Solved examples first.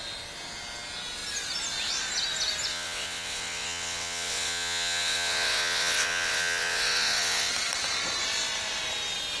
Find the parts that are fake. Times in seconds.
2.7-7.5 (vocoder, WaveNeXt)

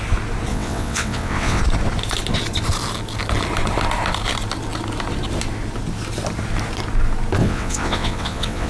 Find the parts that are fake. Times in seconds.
0.5-1.6 (vocoder, WaveNeXt); 7.4-8.7

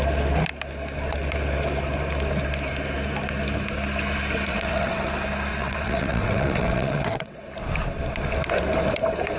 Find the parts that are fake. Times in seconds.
4.5-5.1 (vocoder, WaveNeXt); 5.5-7.4

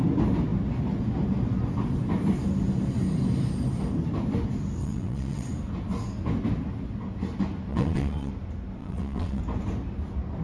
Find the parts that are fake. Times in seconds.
4.8-5.5 (vocoder, WaveNeXt); 7.7-8.3; 8.8-9.4